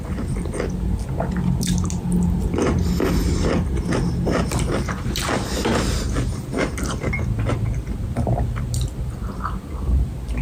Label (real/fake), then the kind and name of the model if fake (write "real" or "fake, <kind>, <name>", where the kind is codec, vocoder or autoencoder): real